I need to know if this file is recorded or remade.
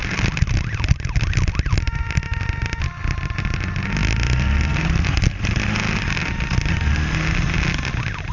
recorded